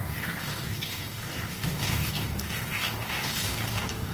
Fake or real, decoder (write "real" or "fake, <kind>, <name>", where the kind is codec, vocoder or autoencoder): fake, codec, DAC